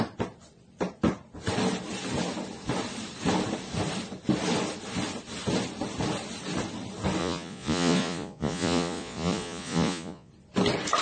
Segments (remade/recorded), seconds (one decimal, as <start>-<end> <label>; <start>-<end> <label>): 0.0-7.2 recorded; 7.2-10.3 remade; 10.3-11.0 recorded